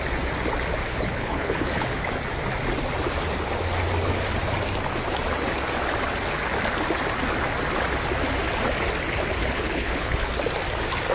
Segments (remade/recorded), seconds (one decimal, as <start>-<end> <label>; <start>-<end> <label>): 0.0-0.8 recorded; 0.8-2.0 remade; 2.0-9.4 recorded; 9.4-10.3 remade; 10.3-11.1 recorded